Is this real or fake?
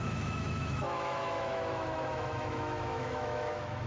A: fake